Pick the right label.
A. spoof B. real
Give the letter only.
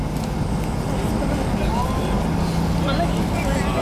B